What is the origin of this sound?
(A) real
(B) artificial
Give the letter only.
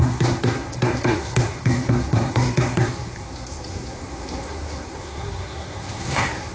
B